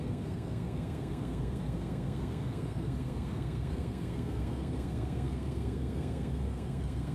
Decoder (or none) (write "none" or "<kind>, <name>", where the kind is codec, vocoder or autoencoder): codec, SNAC